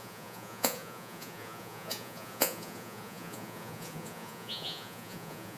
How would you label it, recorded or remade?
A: remade